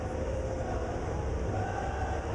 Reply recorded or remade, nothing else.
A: recorded